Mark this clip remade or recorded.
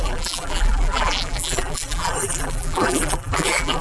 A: remade